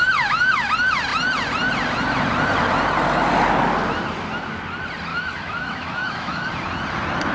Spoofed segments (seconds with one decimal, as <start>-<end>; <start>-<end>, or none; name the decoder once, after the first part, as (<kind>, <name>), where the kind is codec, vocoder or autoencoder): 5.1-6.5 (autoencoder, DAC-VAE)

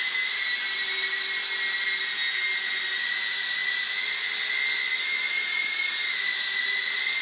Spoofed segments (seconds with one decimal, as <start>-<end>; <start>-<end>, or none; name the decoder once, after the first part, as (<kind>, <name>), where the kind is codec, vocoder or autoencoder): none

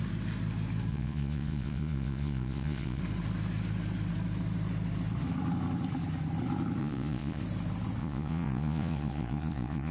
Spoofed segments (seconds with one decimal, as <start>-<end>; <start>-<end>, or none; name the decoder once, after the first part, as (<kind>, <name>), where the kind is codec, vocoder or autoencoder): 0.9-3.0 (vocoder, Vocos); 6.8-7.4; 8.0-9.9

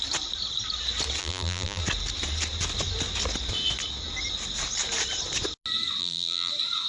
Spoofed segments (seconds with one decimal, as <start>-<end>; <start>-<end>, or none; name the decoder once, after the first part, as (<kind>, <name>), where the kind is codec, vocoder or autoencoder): 1.2-1.8 (vocoder, BigVGAN v2); 6.0-6.5